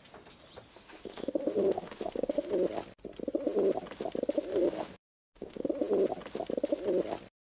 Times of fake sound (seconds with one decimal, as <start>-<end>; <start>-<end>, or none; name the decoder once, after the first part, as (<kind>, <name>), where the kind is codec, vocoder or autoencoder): 0.7-2.5 (autoencoder, DAC-VAE); 4.5-5.7

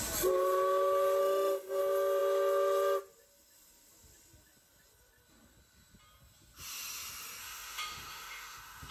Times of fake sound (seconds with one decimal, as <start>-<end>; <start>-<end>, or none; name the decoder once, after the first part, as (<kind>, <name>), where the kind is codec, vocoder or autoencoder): 1.2-1.8 (autoencoder, DAC-VAE); 7.4-8.9

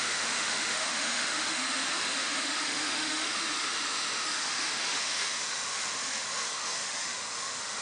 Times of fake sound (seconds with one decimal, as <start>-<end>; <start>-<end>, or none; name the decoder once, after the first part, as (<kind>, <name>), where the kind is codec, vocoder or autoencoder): 0.0-7.8 (autoencoder, DAC-VAE)

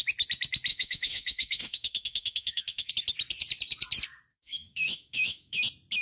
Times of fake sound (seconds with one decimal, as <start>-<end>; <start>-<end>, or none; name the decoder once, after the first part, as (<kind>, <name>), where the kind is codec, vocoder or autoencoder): 0.7-2.9 (autoencoder, DAC-VAE); 4.3-5.6

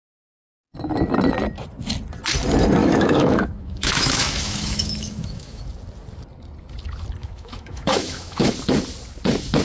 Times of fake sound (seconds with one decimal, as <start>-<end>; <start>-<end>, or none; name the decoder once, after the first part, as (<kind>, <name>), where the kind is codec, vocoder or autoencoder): 2.8-5.6 (autoencoder, DAC-VAE); 7.2-8.5

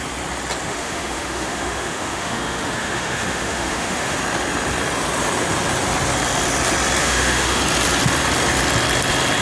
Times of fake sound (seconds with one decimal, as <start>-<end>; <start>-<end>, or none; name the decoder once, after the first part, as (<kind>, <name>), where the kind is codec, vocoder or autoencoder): 0.7-4.2 (autoencoder, DAC-VAE); 7.0-7.6

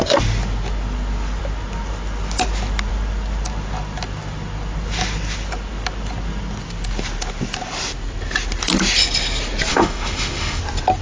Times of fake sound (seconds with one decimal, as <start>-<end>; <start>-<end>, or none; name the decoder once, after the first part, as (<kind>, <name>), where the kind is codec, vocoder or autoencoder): 9.7-10.6 (autoencoder, DAC-VAE)

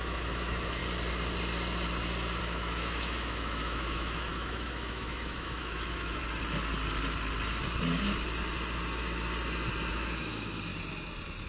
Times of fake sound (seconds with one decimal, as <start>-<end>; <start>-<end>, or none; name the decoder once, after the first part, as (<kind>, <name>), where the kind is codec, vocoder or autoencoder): 0.0-0.8 (autoencoder, DAC-VAE); 2.4-6.2; 9.9-10.7